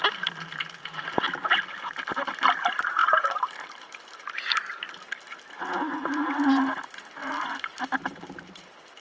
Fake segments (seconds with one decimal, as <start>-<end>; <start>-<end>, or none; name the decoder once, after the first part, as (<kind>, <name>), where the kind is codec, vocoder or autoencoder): 3.0-4.3 (vocoder, BigVGAN v2); 7.2-9.0